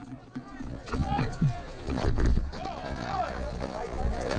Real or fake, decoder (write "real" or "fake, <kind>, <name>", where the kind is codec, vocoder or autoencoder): fake, vocoder, Vocos